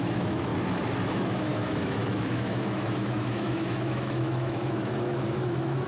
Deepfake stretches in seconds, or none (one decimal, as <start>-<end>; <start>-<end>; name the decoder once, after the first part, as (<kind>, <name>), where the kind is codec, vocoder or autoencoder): 0.0-0.5 (autoencoder, DAC-VAE); 1.1-5.9